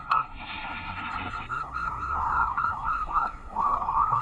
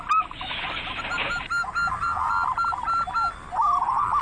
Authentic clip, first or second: second